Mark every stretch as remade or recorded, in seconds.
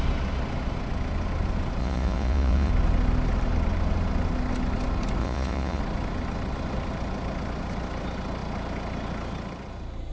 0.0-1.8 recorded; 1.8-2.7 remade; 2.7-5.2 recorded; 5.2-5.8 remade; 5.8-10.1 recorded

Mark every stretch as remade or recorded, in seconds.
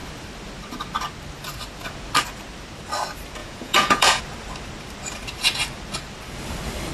0.0-3.4 recorded; 3.4-4.2 remade; 4.2-6.9 recorded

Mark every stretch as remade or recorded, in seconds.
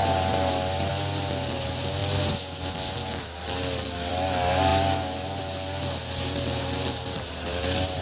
0.0-8.0 recorded